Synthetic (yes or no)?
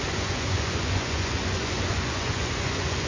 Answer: yes